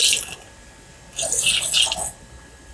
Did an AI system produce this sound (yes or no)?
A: no